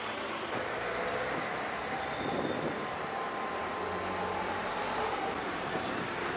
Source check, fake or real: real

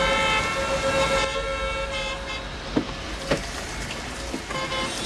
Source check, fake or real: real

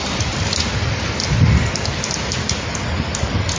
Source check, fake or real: real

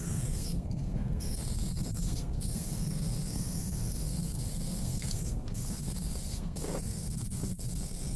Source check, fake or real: fake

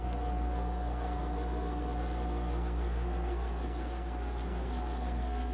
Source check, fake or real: fake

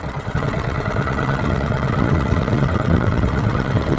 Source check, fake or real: fake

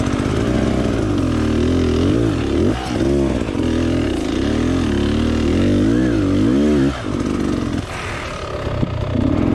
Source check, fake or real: real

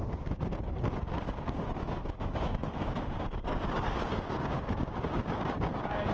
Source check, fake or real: fake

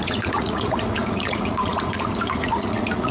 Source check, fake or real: fake